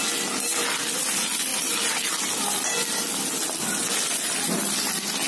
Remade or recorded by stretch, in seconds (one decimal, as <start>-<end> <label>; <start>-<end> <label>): 0.0-5.3 recorded